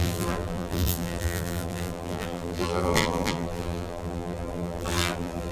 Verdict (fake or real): fake